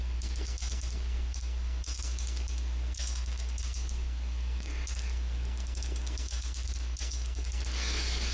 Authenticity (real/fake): fake